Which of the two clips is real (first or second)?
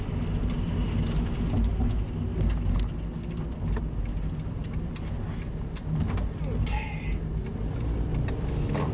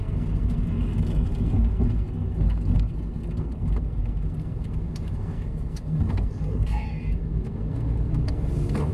first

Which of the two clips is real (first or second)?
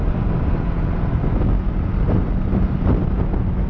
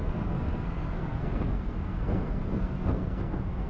first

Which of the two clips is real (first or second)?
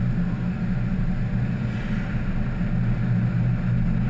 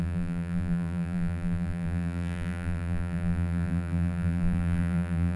first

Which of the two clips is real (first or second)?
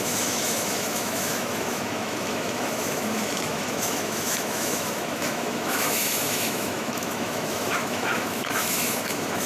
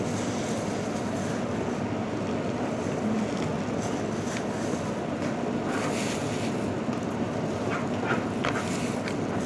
second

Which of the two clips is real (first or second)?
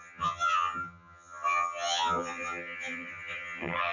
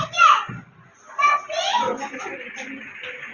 second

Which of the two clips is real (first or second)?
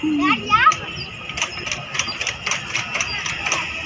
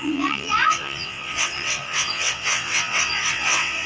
first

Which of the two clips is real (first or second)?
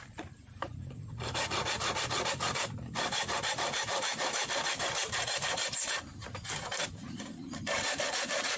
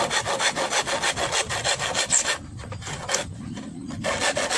second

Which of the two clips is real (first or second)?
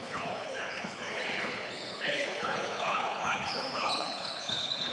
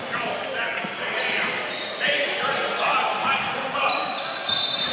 second